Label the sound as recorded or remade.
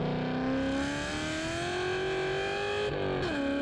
recorded